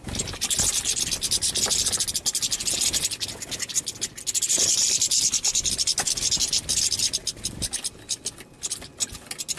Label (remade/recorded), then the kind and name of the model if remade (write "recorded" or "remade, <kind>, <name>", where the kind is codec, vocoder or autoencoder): recorded